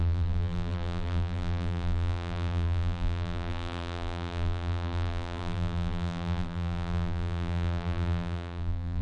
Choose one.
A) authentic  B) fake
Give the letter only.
B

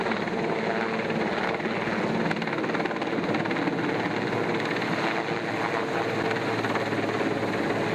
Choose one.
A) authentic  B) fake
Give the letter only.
A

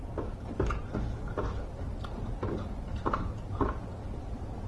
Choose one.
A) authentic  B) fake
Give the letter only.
A